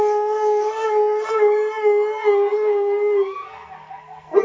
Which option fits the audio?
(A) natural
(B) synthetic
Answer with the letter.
B